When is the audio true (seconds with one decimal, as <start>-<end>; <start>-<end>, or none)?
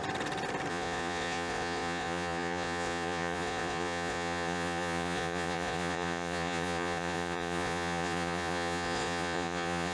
0.0-0.7